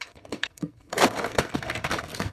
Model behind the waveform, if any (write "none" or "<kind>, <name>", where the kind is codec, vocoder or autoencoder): codec, SNAC